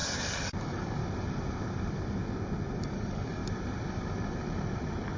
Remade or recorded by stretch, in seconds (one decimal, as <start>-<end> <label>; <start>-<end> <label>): 0.0-0.6 recorded; 0.6-1.0 remade; 1.0-2.8 recorded; 2.8-3.4 remade; 3.4-5.2 recorded